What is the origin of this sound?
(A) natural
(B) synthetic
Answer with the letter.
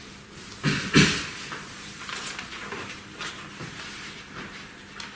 B